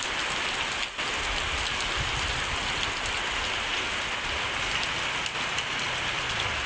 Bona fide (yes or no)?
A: yes